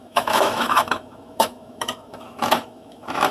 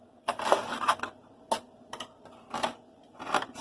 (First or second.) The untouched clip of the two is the second